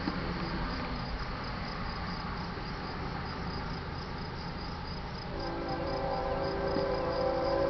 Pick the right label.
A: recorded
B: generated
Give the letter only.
A